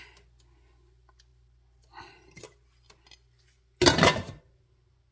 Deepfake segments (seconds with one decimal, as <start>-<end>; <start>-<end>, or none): none